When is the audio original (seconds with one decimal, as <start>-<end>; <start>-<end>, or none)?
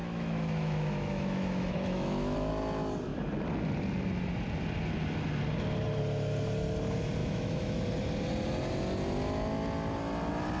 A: 2.5-7.2; 7.9-10.6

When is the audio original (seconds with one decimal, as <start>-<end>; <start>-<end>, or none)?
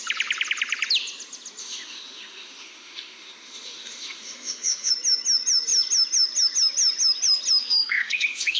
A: 0.0-1.6; 4.9-7.6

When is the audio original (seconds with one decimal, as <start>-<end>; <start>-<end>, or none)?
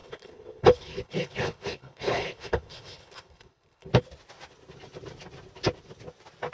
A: 3.9-6.5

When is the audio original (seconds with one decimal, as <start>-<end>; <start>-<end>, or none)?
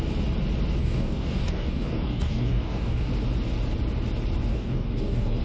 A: 0.0-0.8; 3.1-4.5